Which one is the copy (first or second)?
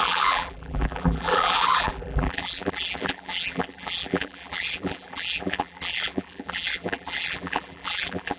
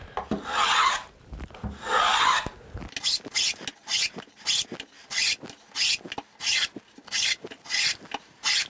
first